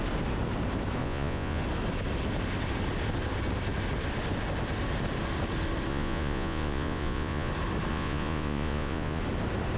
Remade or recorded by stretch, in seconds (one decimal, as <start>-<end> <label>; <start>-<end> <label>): 0.0-1.0 recorded; 1.0-1.6 remade; 1.6-5.9 recorded; 5.9-7.5 remade; 7.5-7.9 recorded; 7.9-9.2 remade; 9.2-9.8 recorded